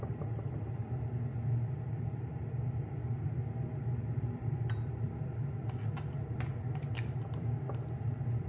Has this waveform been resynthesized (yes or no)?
yes